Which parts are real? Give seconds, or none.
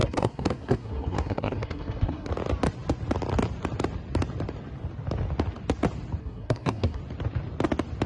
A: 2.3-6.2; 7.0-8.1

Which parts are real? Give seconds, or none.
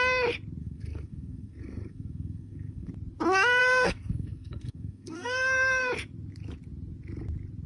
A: 0.0-0.6; 2.9-3.6; 5.9-7.7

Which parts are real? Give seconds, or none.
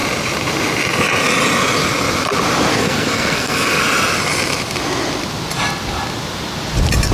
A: 0.0-2.7; 3.8-7.1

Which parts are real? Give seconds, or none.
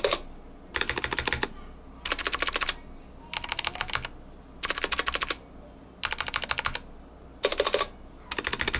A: 0.0-8.8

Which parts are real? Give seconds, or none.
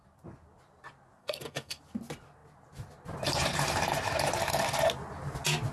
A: 0.0-1.2; 1.8-5.7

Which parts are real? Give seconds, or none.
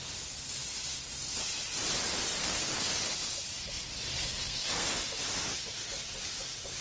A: 0.0-2.4; 2.9-4.3; 4.9-6.8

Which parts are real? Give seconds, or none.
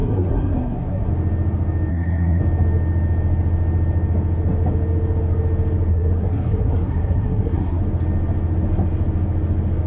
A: 1.1-1.9; 2.4-5.9; 7.8-9.9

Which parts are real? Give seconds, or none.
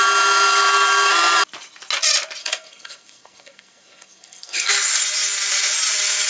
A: 0.0-2.4; 4.7-6.3